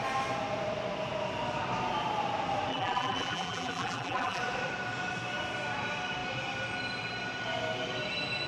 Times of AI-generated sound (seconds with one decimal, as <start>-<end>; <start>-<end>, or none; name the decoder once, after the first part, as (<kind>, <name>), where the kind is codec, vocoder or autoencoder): 2.7-4.4 (vocoder, BigVGAN v2)